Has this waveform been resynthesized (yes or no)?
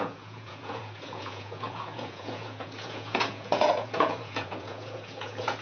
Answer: yes